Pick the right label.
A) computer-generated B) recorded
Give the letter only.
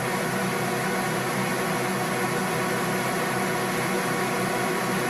B